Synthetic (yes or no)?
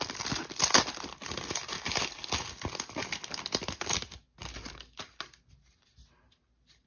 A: no